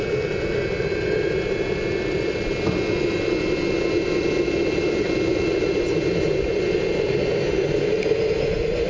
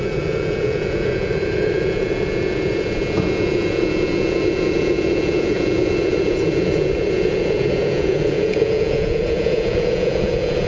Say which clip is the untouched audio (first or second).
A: first